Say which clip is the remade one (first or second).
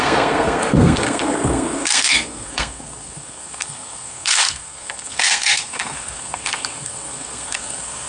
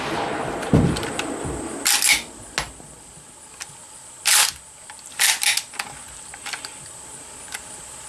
first